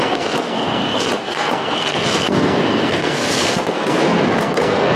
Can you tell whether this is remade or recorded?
remade